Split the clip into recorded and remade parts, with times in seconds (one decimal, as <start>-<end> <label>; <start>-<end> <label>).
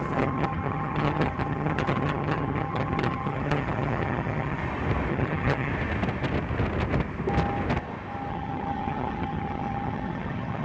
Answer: 0.0-4.6 remade; 4.6-5.1 recorded; 5.1-5.7 remade; 5.7-8.3 recorded; 8.3-10.6 remade